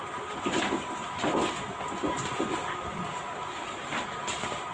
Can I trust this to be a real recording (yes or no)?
yes